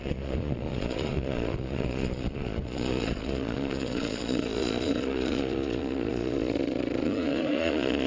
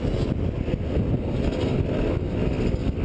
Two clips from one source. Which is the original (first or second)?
second